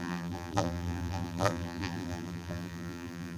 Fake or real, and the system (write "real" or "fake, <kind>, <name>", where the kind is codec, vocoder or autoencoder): fake, vocoder, BigVGAN v2